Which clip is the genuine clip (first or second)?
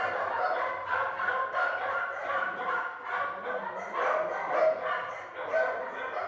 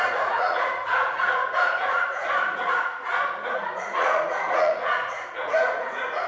first